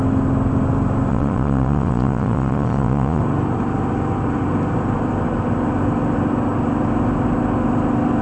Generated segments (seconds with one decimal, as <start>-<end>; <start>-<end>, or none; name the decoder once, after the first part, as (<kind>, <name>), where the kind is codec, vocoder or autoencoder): 1.1-3.2 (vocoder, Vocos)